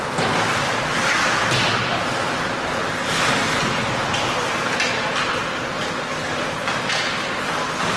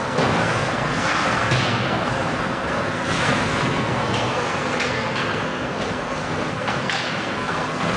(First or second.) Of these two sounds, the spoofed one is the second